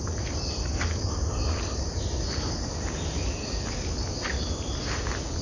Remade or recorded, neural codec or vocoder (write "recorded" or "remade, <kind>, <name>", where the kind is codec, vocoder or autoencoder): recorded